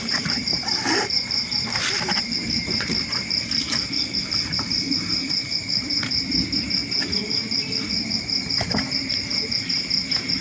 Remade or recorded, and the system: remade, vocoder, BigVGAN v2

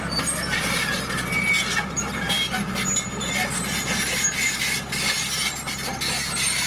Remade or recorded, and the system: recorded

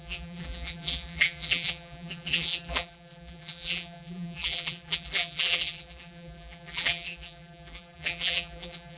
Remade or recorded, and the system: remade, vocoder, BigVGAN v2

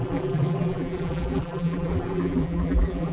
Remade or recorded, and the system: remade, vocoder, BigVGAN v2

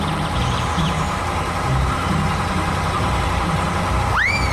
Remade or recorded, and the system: remade, vocoder, BigVGAN v2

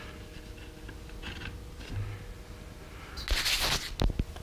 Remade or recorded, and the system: recorded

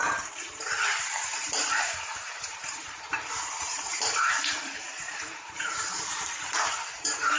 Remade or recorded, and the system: remade, vocoder, BigVGAN v2